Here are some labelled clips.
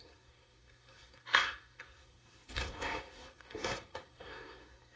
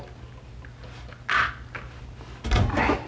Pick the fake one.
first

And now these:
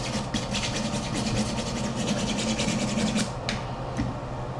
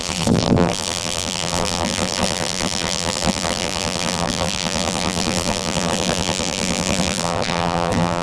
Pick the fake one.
second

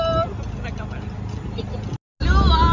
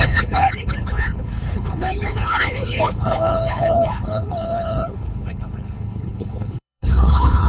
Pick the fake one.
second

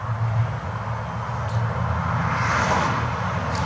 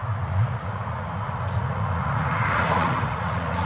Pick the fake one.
second